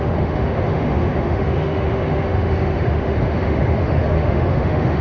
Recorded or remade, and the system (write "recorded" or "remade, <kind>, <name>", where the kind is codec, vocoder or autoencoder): remade, autoencoder, DAC-VAE